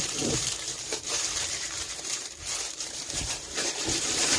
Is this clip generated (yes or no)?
yes